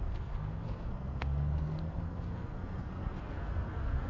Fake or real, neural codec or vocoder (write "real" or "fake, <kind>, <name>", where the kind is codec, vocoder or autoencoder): fake, codec, SNAC